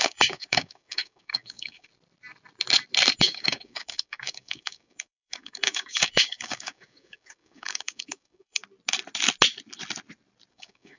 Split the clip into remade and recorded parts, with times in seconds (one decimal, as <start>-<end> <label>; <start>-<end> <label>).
0.0-1.9 remade; 1.9-3.2 recorded; 3.2-8.6 remade; 8.6-10.5 recorded; 10.5-11.0 remade